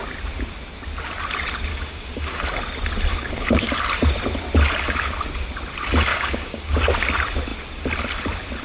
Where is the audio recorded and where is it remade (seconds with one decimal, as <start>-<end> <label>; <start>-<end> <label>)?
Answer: 0.0-1.7 recorded; 1.7-2.4 remade; 2.4-3.1 recorded; 3.1-3.7 remade; 3.7-6.1 recorded; 6.1-6.7 remade; 6.7-8.6 recorded